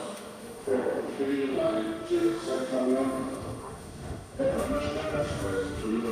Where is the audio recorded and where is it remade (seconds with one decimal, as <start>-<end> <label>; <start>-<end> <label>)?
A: 0.0-6.1 remade